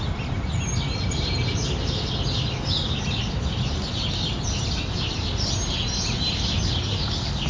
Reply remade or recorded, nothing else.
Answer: recorded